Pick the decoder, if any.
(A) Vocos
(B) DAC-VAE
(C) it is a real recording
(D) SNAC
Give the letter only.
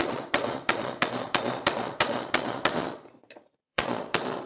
A